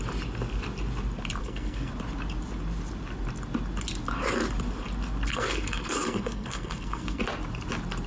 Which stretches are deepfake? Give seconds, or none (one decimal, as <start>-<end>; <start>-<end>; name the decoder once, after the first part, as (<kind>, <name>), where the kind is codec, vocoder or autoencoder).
1.4-1.9 (codec, SNAC); 5.3-7.2